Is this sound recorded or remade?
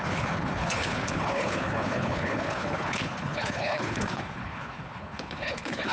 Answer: remade